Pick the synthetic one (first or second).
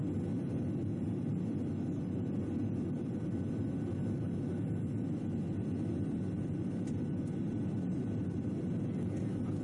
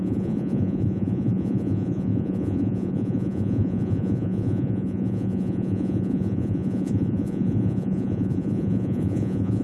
second